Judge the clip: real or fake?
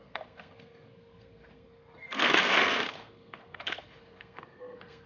fake